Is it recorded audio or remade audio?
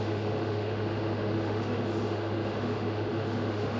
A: remade